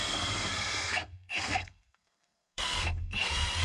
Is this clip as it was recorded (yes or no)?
no